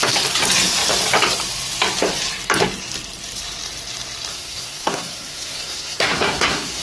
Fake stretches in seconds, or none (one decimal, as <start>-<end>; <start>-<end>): 4.3-6.8